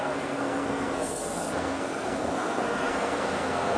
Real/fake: fake